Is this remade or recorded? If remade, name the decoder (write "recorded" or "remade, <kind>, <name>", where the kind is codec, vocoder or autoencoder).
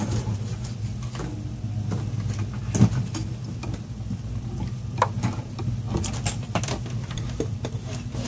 recorded